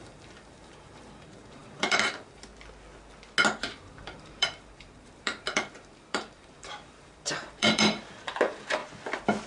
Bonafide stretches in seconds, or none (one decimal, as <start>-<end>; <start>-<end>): 2.5-3.6; 8.8-9.5